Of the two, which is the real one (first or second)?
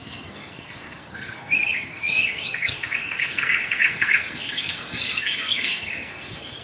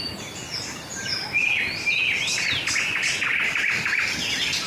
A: second